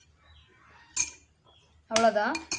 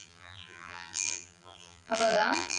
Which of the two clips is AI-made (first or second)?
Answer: second